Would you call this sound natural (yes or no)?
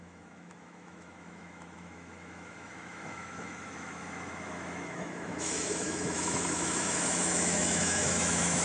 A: no